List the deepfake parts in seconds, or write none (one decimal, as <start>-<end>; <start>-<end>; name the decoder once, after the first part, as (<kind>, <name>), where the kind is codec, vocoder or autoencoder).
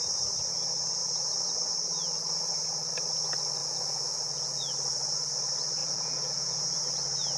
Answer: 3.6-4.7 (vocoder, Vocos); 5.8-6.6